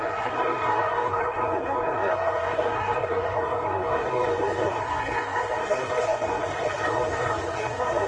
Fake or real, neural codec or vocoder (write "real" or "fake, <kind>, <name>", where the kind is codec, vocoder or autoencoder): fake, codec, SNAC